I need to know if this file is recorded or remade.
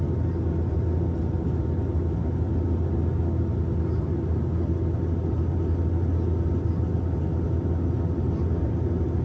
recorded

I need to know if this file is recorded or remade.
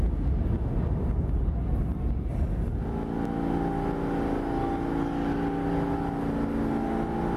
recorded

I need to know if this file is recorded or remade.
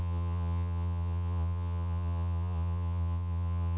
remade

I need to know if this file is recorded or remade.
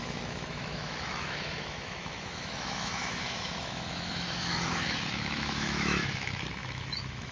remade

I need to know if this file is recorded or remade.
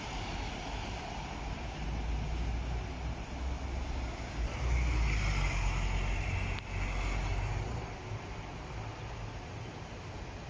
recorded